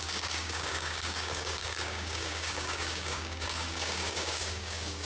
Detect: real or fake fake